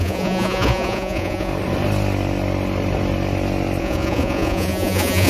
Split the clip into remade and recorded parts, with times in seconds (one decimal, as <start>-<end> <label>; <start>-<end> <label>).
0.0-1.5 remade; 1.5-3.8 recorded; 3.8-5.3 remade